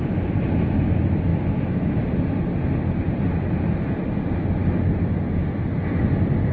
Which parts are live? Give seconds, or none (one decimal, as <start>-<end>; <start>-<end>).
0.0-6.5